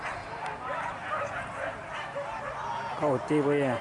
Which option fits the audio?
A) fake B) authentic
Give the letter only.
B